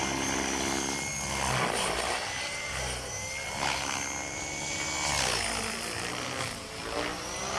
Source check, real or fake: real